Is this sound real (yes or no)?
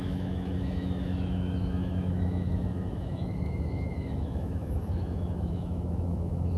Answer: no